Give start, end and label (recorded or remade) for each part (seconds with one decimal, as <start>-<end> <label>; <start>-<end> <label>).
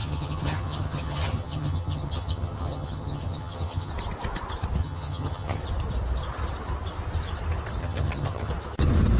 0.0-3.9 remade; 3.9-4.8 recorded; 4.8-5.6 remade; 5.6-7.8 recorded; 7.8-8.5 remade; 8.5-9.2 recorded